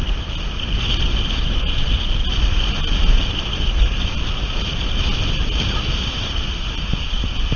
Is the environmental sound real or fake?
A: real